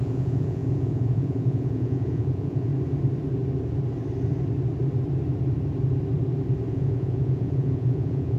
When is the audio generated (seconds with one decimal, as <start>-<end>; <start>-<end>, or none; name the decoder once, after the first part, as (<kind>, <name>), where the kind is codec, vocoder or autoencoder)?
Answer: 0.0-2.7 (vocoder, Vocos); 6.7-8.4